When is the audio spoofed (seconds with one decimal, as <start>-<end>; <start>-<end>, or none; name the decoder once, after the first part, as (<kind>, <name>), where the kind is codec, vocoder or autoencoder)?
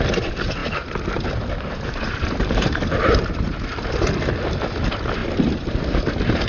0.6-4.1 (vocoder, BigVGAN v2); 5.2-6.5